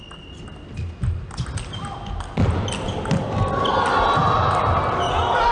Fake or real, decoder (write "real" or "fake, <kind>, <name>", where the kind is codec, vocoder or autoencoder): real